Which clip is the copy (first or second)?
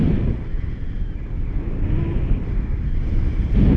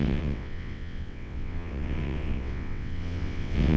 second